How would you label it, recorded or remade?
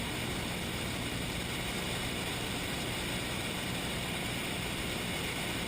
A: remade